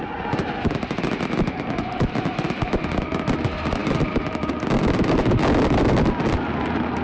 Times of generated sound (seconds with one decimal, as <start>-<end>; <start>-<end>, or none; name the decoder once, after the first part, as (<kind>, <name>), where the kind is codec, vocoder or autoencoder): none